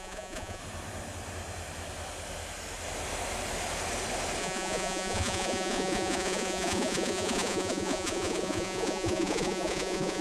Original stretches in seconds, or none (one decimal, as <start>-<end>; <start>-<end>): 0.6-4.4